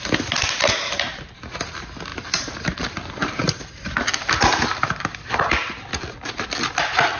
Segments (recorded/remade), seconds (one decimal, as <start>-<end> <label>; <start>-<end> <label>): 0.0-2.1 recorded; 2.1-6.0 remade; 6.0-7.2 recorded